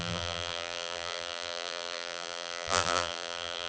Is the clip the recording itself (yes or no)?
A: no